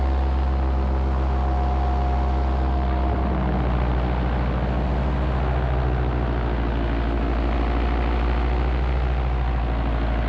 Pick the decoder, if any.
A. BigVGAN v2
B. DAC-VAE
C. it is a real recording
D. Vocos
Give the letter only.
C